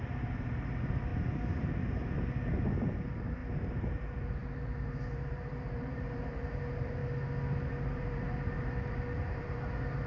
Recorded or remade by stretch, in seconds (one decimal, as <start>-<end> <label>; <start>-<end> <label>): 0.0-1.1 remade; 1.1-2.8 recorded; 2.8-7.0 remade; 7.0-7.7 recorded; 7.7-10.1 remade